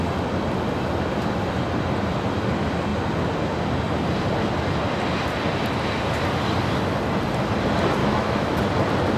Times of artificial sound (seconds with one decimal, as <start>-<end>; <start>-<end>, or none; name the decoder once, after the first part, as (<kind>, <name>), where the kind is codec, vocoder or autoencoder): 8.0-8.6 (autoencoder, DAC-VAE)